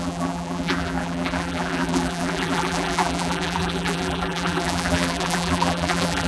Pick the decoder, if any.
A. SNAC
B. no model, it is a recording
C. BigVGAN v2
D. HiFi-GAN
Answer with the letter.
C